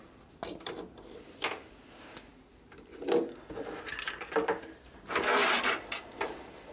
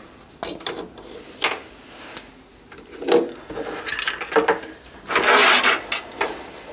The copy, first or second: first